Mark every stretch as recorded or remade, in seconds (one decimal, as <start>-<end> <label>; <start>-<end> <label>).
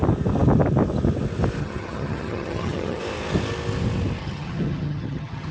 0.0-1.6 recorded; 1.6-3.0 remade; 3.0-4.2 recorded; 4.2-5.5 remade